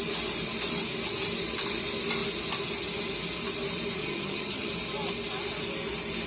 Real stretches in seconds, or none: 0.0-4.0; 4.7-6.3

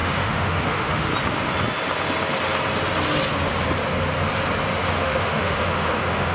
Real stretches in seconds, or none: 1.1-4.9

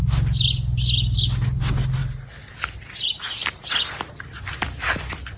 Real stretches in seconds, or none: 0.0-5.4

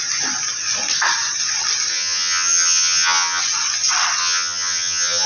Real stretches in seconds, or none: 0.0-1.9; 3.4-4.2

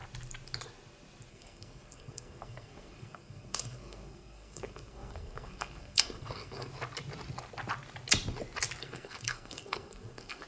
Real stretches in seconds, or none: 0.0-1.3; 6.7-8.8

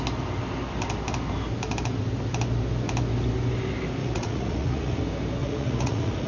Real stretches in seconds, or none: 0.0-4.0; 5.0-5.4

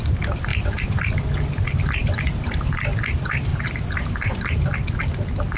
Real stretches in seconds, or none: 0.0-0.5; 1.0-2.0; 2.6-3.5; 4.1-5.6